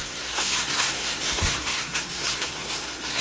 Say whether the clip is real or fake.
fake